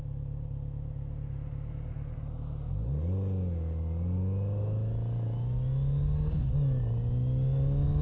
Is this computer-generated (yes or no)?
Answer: no